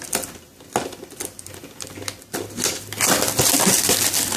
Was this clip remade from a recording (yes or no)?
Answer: no